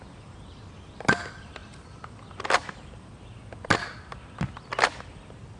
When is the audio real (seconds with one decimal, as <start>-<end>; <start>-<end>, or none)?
0.0-5.6